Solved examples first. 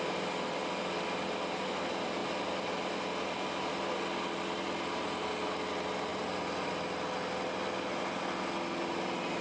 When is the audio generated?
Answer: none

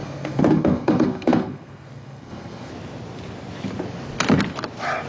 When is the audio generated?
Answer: 0.0-2.7 (codec, SNAC)

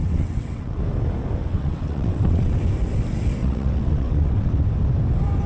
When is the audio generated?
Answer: 0.0-0.8 (vocoder, WaveNeXt); 1.4-2.6; 3.4-4.5

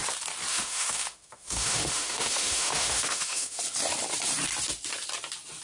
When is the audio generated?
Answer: 0.5-3.6 (autoencoder, DAC-VAE)

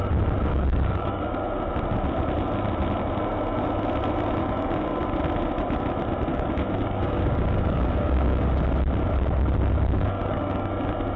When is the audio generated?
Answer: 0.5-1.2 (codec, DAC); 4.4-5.0; 6.3-8.4; 9.7-10.7